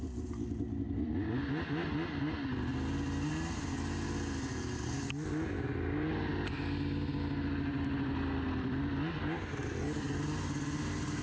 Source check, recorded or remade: recorded